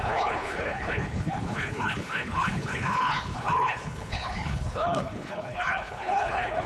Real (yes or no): no